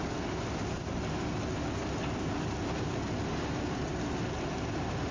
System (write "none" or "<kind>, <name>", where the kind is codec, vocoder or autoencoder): none